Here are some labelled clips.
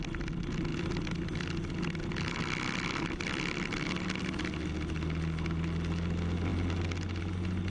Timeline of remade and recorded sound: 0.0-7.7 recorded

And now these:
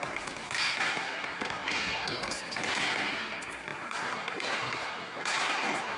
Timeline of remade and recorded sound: 0.0-6.0 remade

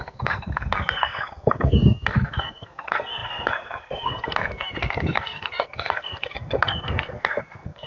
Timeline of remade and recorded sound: 0.0-7.9 remade

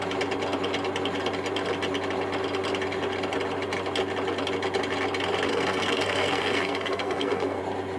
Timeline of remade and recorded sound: 0.0-5.5 recorded; 5.5-7.6 remade; 7.6-8.0 recorded

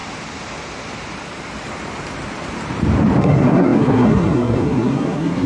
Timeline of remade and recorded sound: 0.0-3.2 recorded; 3.2-5.5 remade

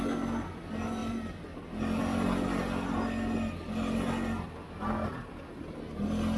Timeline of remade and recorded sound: 0.0-6.4 recorded